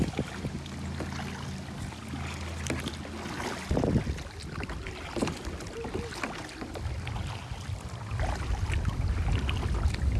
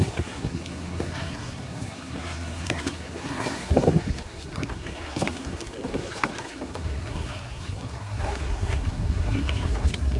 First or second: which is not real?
second